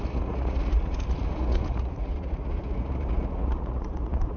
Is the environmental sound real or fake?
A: fake